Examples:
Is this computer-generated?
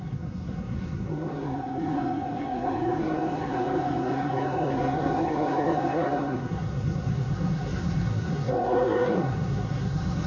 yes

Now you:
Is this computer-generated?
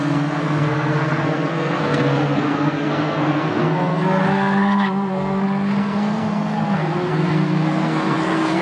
yes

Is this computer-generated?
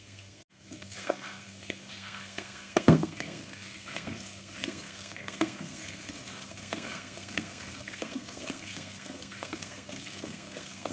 yes